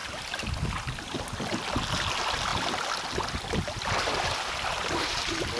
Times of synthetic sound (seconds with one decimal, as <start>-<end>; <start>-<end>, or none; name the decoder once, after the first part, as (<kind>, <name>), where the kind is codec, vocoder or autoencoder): none